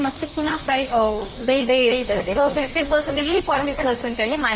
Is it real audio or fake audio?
fake